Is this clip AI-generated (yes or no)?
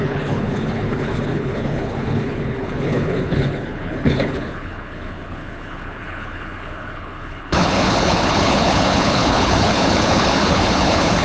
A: yes